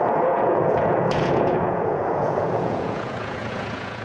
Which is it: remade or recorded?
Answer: remade